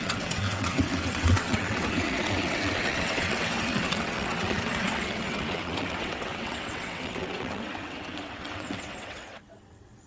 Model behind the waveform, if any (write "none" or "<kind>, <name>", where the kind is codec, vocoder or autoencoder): vocoder, WaveNeXt